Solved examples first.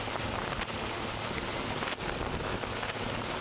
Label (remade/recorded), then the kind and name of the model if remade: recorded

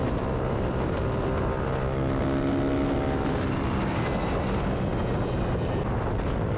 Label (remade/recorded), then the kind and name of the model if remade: recorded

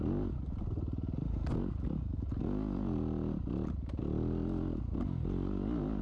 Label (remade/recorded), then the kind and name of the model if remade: recorded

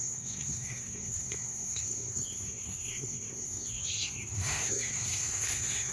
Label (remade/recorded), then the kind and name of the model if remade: remade, codec, SNAC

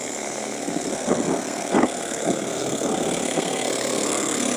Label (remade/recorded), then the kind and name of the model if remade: remade, codec, SNAC